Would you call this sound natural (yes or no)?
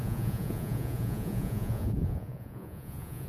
no